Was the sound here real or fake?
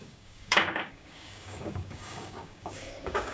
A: fake